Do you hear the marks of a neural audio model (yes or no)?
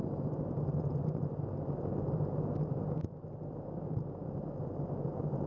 no